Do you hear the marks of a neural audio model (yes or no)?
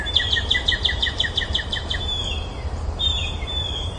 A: yes